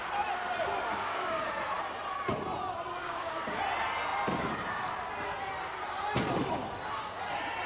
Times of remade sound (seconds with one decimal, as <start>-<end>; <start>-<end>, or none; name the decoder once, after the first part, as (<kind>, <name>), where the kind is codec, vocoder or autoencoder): 0.9-1.5 (codec, DAC); 3.0-3.6